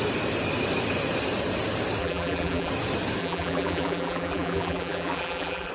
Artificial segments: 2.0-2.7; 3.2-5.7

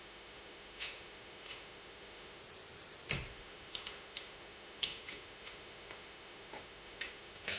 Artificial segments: 0.0-2.4; 3.3-7.6

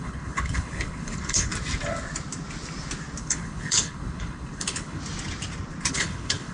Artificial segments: 0.0-1.5; 3.2-5.0; 5.9-6.5

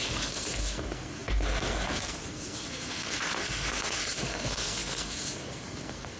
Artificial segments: 0.0-6.2

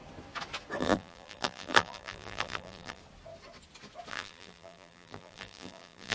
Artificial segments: 0.8-3.0; 4.1-6.1

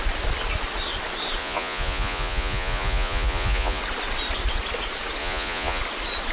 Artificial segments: 1.4-3.8; 5.2-5.8

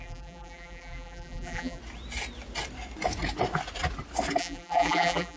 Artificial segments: 0.0-1.8; 4.4-5.4

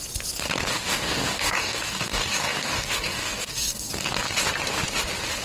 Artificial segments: 0.7-3.9